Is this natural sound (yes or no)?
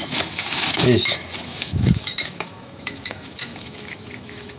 no